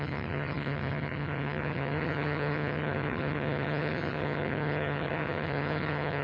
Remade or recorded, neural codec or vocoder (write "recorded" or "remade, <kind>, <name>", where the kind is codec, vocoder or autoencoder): remade, vocoder, HiFi-GAN